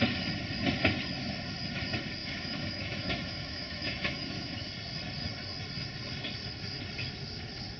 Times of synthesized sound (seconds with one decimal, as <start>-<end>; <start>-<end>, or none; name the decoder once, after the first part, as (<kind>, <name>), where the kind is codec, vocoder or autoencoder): 2.2-4.7 (autoencoder, DAC-VAE)